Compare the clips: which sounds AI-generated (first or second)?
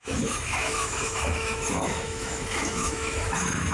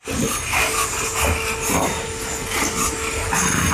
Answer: first